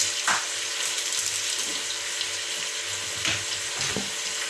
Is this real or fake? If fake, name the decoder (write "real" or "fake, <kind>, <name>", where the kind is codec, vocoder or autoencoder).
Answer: real